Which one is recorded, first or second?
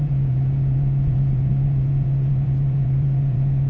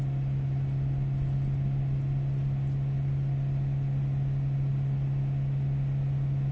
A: second